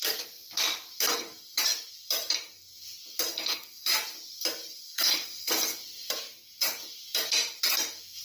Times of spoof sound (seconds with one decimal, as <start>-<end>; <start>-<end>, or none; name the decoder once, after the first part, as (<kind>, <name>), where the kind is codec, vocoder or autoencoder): 3.3-3.9 (codec, SNAC); 4.8-5.5